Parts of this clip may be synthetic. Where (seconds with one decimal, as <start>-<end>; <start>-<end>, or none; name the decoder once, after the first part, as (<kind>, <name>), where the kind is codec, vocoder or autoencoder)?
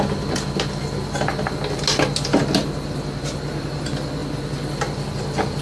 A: none